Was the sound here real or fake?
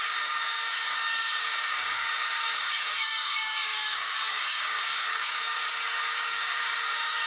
fake